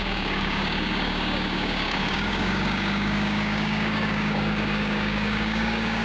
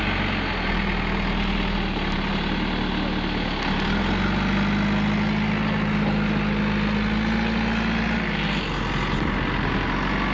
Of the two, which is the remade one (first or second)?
first